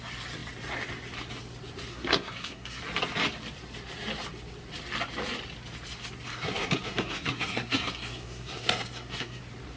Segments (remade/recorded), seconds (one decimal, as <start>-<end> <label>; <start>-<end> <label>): 0.0-1.9 recorded; 1.9-2.8 remade; 2.8-6.3 recorded; 6.3-9.4 remade; 9.4-9.8 recorded